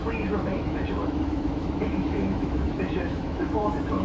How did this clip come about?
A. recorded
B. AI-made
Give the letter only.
B